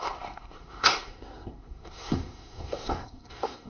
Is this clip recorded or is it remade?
remade